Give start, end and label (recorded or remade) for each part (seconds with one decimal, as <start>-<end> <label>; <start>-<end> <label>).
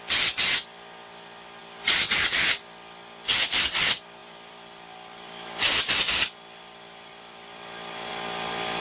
0.0-1.6 recorded; 1.6-2.3 remade; 2.3-4.2 recorded; 4.2-8.1 remade; 8.1-8.8 recorded